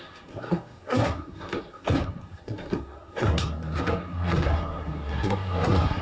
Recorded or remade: remade